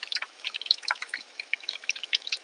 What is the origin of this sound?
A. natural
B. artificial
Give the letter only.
B